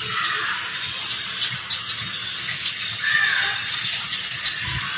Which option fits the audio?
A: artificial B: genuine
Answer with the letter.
B